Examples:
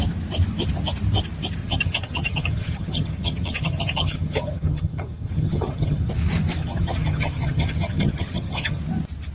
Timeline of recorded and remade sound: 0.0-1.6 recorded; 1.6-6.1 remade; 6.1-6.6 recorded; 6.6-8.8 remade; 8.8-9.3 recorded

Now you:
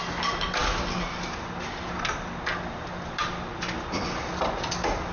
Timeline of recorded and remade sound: 0.0-5.1 recorded

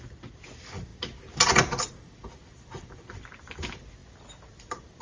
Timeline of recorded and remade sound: 0.0-5.0 recorded